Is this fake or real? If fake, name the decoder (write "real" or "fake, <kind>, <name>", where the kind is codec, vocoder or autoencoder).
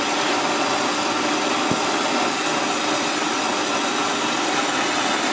real